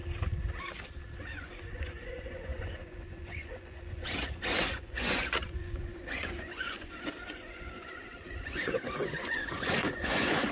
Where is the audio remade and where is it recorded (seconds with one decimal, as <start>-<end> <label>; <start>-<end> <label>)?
0.0-1.3 recorded; 1.3-10.5 remade